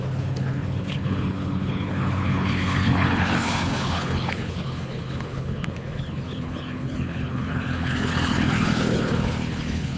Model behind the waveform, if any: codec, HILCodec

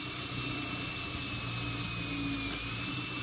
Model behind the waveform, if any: none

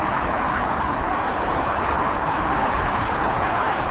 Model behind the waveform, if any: codec, HILCodec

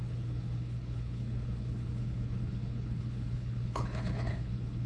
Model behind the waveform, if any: codec, HILCodec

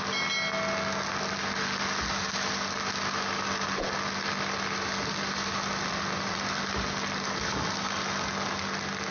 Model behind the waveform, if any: none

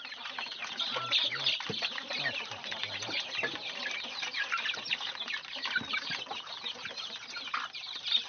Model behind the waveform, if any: none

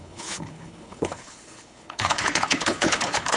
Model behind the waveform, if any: codec, HILCodec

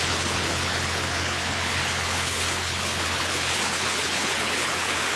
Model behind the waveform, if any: codec, HILCodec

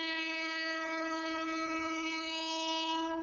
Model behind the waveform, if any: codec, HILCodec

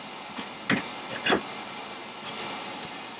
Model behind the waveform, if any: none